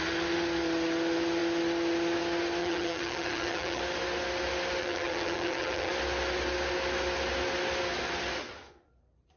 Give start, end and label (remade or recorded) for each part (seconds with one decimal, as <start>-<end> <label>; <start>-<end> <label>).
0.0-2.6 recorded; 2.6-3.8 remade; 3.8-4.8 recorded; 4.8-5.9 remade; 5.9-9.4 recorded